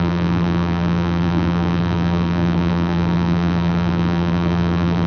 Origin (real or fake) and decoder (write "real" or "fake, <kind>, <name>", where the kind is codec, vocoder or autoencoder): fake, vocoder, BigVGAN v2